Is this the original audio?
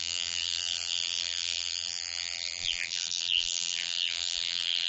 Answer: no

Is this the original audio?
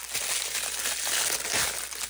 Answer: yes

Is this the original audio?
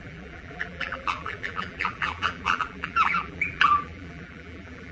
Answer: no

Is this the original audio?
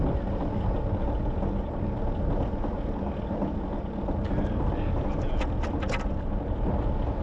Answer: yes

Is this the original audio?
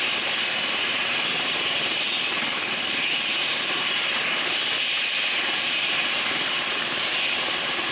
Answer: no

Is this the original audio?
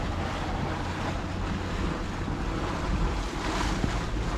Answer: yes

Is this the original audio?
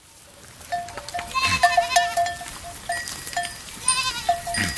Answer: yes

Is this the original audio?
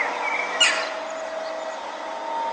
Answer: yes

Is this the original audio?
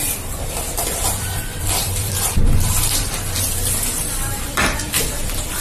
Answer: no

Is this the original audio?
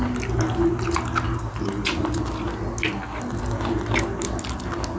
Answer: yes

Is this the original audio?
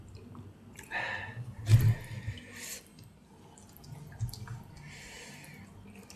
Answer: yes